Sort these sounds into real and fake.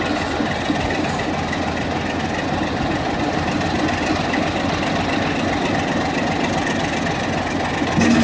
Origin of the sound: real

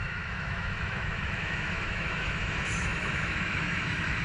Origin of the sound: fake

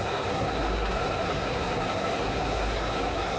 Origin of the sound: fake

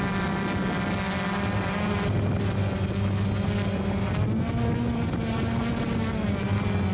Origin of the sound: real